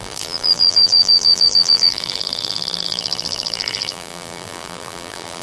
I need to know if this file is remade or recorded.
remade